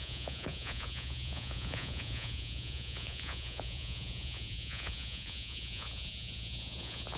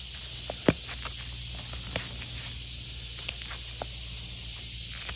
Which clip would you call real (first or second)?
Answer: second